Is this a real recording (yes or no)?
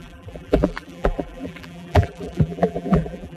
no